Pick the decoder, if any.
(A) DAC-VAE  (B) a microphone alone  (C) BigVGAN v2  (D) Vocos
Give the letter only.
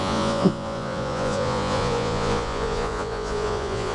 D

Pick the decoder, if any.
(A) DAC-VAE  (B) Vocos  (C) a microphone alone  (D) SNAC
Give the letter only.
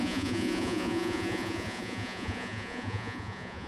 B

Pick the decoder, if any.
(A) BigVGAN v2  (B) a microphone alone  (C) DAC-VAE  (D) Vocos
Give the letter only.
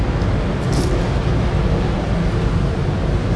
B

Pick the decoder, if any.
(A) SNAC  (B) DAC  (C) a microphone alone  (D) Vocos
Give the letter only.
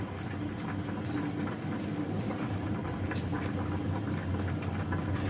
C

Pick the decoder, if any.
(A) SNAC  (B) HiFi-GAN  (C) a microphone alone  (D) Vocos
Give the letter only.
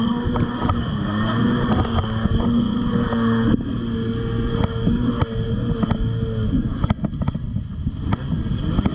C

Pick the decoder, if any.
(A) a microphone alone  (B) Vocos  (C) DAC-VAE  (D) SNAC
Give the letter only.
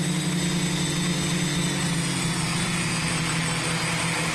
A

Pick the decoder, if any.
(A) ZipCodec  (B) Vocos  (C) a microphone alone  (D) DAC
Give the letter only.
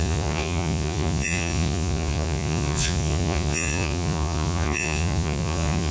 B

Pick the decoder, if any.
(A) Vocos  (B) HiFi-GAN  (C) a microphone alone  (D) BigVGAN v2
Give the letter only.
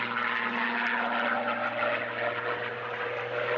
C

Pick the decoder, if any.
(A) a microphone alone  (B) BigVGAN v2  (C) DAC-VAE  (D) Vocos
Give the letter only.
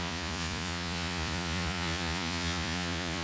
D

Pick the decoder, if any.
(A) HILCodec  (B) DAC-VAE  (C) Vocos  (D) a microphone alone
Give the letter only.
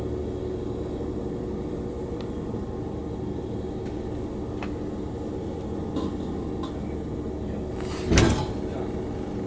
D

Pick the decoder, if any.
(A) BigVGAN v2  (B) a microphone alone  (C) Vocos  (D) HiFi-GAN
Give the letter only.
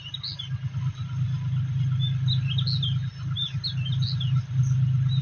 B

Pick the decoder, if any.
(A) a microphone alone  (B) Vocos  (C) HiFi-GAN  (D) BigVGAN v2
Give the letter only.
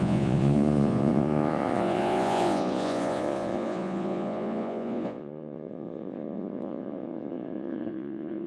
B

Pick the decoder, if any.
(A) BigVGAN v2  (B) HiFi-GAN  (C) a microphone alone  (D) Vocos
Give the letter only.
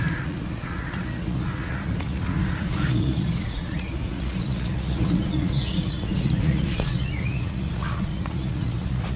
D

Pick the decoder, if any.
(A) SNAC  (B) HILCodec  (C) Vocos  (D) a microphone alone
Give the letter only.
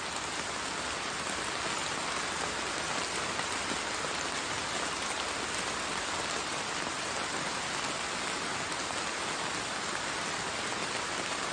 D